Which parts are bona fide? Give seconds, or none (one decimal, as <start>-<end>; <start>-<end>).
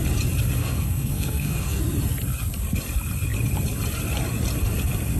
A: 0.0-0.6; 1.8-5.2